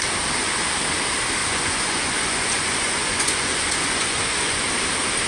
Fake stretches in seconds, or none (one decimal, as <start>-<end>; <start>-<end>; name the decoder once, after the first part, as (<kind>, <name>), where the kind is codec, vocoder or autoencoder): 1.4-4.6 (vocoder, Vocos)